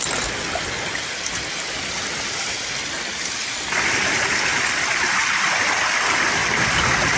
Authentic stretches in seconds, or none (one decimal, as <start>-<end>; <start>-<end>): 0.0-7.2